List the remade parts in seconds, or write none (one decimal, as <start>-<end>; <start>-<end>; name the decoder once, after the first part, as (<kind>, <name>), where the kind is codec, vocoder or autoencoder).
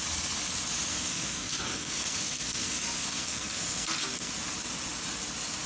0.9-4.3 (codec, SNAC)